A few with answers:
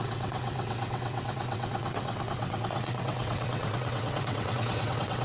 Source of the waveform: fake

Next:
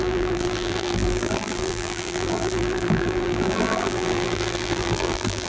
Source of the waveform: fake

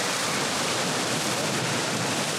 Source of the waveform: real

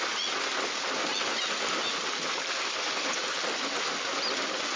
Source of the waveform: real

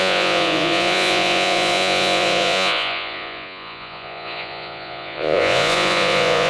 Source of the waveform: fake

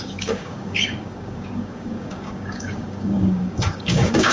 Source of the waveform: fake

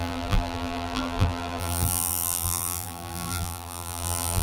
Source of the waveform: fake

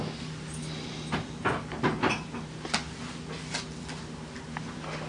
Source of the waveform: real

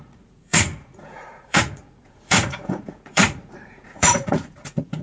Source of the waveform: fake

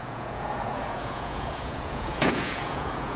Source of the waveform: fake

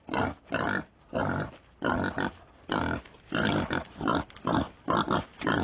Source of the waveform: real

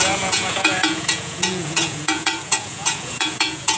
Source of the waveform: fake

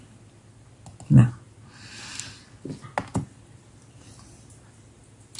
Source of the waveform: real